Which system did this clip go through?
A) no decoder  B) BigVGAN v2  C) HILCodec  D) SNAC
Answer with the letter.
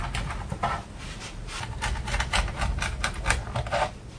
A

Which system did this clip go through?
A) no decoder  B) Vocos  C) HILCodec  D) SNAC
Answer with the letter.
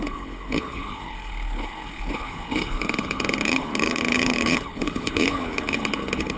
C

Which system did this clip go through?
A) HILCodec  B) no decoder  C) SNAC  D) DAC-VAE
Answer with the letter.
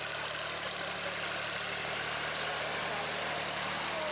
B